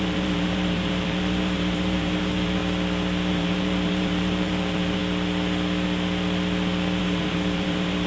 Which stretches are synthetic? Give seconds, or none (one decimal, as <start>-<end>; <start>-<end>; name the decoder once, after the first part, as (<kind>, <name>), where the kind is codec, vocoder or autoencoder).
0.0-2.6 (vocoder, BigVGAN v2); 3.3-5.0; 7.0-8.1